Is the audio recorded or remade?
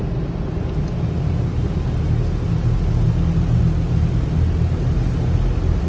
recorded